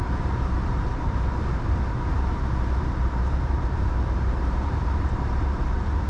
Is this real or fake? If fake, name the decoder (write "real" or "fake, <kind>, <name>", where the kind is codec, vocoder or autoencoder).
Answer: fake, vocoder, BigVGAN v2